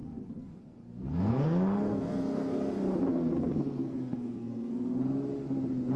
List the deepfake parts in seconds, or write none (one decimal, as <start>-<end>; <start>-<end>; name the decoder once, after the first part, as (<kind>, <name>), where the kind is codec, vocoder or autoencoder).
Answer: 0.0-2.7 (codec, SNAC); 3.1-5.0